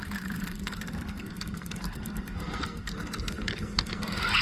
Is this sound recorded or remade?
remade